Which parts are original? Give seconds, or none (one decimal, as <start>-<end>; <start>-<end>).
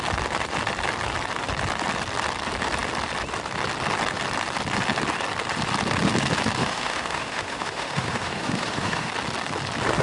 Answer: 0.0-6.6; 9.1-10.0